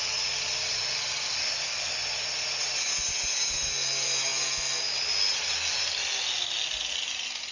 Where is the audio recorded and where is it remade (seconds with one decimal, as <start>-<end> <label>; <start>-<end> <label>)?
0.0-7.5 recorded